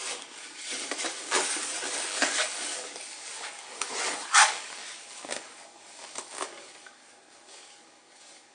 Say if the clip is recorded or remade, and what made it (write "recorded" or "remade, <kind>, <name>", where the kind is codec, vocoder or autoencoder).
remade, codec, DAC